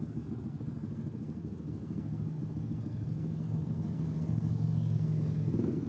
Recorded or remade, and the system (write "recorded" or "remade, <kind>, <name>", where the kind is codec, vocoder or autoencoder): remade, codec, SNAC